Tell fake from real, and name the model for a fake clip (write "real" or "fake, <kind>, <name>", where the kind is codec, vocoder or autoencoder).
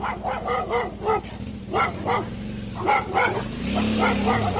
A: real